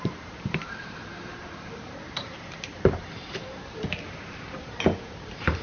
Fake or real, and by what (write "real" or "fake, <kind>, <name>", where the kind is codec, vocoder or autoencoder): fake, vocoder, BigVGAN v2